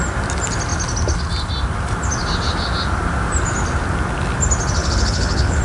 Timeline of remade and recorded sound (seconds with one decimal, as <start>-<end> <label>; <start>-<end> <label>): 0.0-4.8 recorded; 4.8-5.6 remade

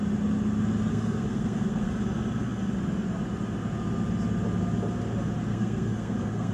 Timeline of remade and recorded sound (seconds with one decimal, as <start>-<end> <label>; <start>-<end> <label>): 0.0-0.9 recorded; 0.9-1.9 remade; 1.9-5.5 recorded; 5.5-6.5 remade

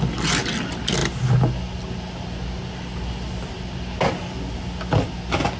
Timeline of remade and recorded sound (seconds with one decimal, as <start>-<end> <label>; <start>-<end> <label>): 0.0-5.6 recorded